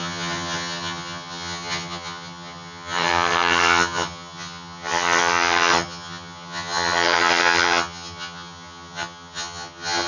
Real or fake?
fake